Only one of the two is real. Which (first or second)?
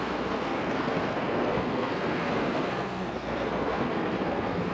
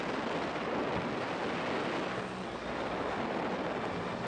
second